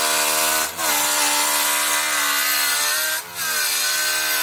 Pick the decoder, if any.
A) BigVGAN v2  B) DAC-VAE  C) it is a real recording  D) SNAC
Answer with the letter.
C